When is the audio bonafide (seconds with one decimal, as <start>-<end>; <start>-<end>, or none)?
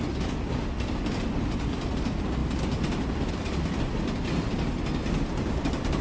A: 0.0-6.0